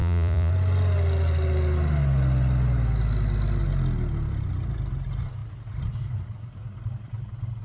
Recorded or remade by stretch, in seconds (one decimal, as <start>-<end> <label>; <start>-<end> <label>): 0.0-0.5 remade; 0.5-7.6 recorded